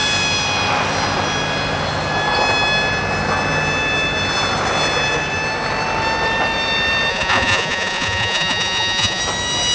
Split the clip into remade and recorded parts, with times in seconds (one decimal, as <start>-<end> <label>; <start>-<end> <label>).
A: 0.0-7.1 recorded; 7.1-9.2 remade; 9.2-9.7 recorded